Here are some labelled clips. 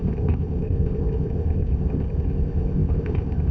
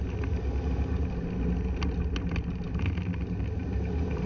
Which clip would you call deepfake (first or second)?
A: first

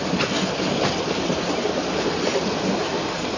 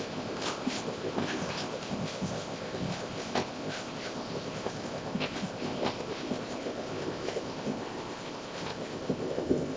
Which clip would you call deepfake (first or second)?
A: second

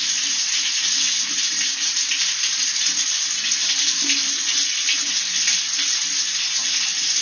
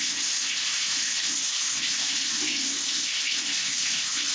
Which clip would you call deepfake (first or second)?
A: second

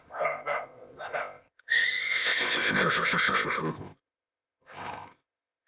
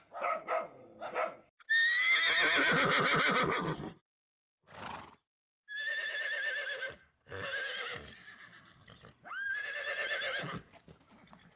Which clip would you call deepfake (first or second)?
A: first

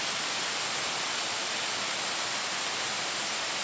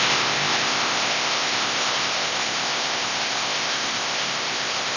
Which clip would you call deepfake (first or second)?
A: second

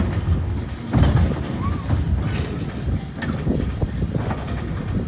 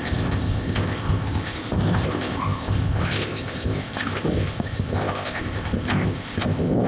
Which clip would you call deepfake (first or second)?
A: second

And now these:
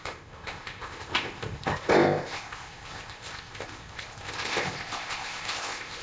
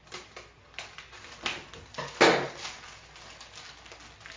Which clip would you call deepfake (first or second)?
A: first